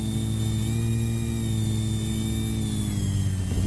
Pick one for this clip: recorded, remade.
recorded